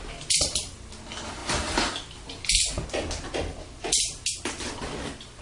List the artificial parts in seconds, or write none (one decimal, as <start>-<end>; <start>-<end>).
none